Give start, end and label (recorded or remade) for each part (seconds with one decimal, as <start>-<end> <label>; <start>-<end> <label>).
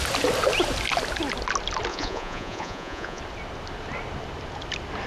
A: 0.0-1.9 recorded; 1.9-3.2 remade; 3.2-5.1 recorded